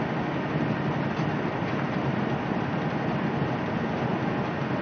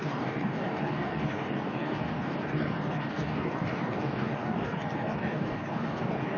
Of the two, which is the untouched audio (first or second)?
first